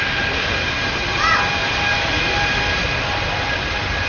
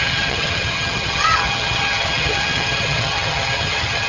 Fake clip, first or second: second